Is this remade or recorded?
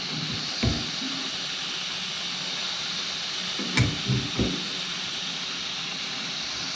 recorded